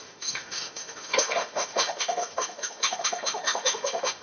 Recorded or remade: remade